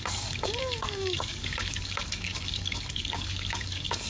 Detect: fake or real fake